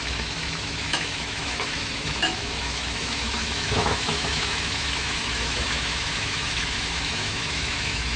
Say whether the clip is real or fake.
fake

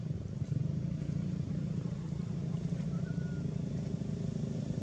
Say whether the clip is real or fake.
fake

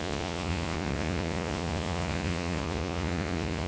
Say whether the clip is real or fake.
fake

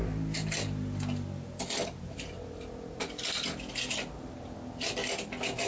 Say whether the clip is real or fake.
real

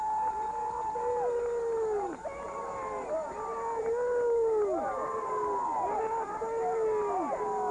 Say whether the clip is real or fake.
real